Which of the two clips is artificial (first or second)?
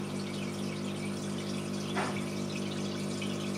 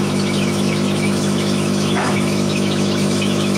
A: second